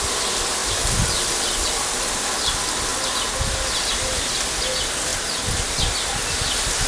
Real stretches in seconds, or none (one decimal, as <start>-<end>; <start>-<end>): 0.0-6.9